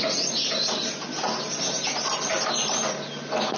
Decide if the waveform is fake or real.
real